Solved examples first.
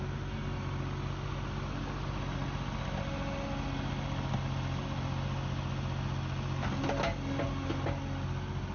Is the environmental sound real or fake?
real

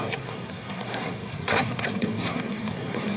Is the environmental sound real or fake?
fake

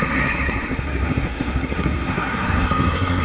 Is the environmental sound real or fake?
fake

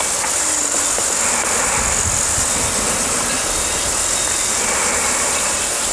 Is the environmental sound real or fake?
real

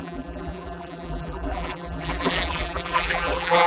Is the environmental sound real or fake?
fake